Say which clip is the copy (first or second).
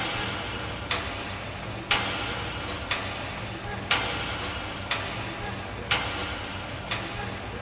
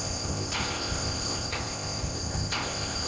second